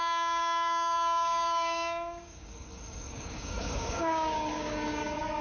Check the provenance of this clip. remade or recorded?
remade